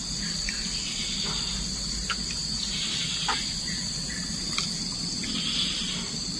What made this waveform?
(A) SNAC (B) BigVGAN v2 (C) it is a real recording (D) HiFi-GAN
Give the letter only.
C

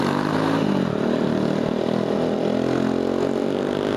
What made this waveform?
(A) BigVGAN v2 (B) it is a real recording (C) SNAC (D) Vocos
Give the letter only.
B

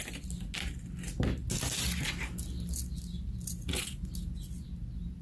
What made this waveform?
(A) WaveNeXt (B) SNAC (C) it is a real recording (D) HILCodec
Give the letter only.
C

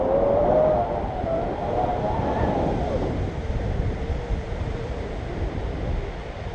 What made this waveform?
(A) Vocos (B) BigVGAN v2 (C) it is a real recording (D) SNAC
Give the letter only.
C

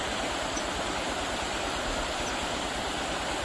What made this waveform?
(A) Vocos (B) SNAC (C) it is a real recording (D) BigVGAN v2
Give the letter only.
C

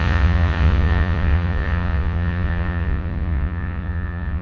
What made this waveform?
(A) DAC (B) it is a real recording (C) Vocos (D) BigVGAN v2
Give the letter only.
C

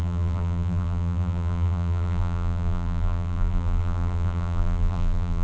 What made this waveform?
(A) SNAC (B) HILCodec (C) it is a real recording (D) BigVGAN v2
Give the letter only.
D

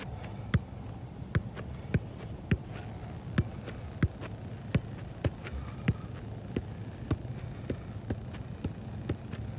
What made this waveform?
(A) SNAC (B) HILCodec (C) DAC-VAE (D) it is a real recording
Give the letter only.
D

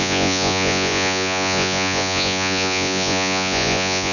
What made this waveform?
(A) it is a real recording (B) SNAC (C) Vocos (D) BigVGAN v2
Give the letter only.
C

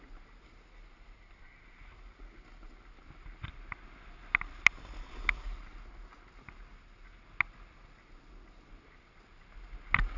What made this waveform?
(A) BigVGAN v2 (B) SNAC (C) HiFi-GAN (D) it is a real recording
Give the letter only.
D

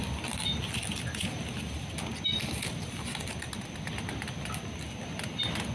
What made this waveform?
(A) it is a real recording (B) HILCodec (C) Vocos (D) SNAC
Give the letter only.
A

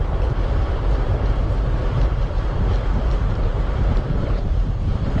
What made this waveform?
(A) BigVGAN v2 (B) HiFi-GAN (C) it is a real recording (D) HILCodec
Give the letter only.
A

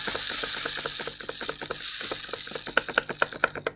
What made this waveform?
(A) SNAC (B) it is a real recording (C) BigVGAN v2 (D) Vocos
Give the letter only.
B